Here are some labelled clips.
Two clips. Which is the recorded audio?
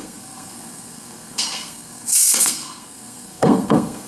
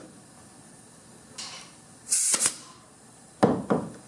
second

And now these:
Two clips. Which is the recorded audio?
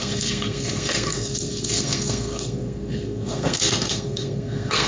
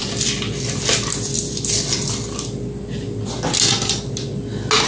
second